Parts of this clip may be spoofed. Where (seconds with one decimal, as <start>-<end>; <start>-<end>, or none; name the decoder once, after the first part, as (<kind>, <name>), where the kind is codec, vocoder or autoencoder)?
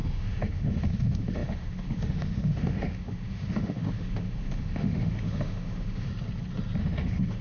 0.0-6.1 (autoencoder, DAC-VAE); 6.8-7.4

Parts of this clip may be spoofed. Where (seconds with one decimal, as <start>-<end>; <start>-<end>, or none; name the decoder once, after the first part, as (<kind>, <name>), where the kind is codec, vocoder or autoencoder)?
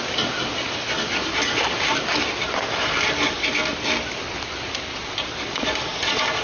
1.2-2.0 (vocoder, BigVGAN v2); 2.4-3.6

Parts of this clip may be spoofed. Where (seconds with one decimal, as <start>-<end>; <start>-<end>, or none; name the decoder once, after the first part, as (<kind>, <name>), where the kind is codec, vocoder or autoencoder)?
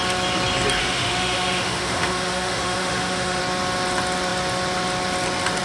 0.8-3.4 (autoencoder, DAC-VAE)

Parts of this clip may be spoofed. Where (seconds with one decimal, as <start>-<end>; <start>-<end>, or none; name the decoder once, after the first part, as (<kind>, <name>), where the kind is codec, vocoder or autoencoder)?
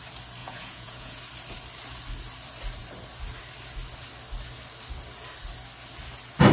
0.4-1.2 (vocoder, Vocos)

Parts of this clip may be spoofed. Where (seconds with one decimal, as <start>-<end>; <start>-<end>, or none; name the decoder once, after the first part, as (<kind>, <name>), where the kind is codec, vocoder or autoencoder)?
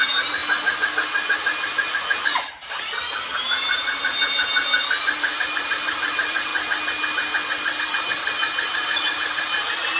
0.0-0.4 (vocoder, BigVGAN v2); 3.1-6.5; 7.8-10.0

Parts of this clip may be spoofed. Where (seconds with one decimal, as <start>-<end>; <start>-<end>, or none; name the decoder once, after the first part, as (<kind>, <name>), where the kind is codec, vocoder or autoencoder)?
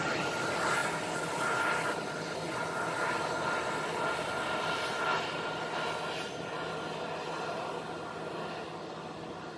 none